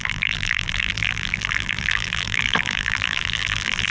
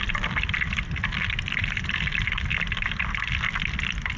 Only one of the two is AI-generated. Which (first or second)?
first